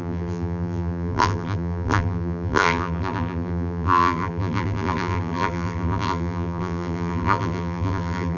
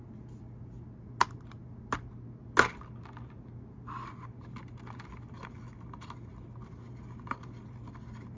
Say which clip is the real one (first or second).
second